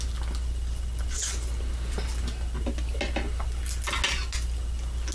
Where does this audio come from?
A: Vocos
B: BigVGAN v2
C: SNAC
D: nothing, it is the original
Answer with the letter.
D